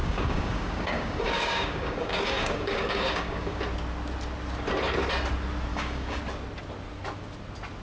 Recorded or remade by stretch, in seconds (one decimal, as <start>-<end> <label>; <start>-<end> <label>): 0.0-3.6 remade; 3.6-5.7 recorded; 5.7-6.2 remade; 6.2-7.8 recorded